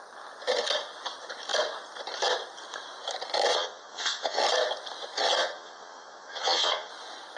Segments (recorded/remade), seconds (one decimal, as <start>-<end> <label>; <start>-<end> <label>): 0.0-3.5 recorded; 3.5-4.4 remade; 4.4-5.4 recorded; 5.4-6.9 remade; 6.9-7.4 recorded